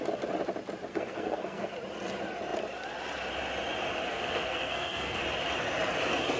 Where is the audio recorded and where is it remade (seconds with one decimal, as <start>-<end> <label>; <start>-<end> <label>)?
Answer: 0.0-0.9 recorded; 0.9-1.7 remade; 1.7-4.1 recorded; 4.1-5.2 remade; 5.2-6.4 recorded